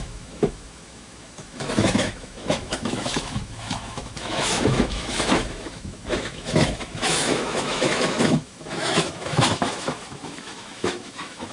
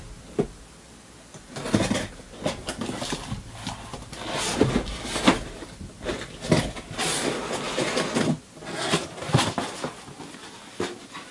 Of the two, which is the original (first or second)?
second